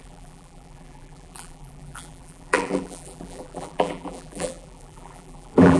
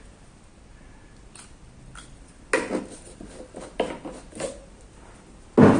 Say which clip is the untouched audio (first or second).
second